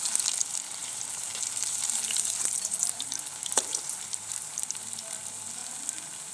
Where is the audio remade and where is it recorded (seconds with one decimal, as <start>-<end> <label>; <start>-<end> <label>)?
0.0-0.8 recorded; 0.8-4.6 remade; 4.6-6.3 recorded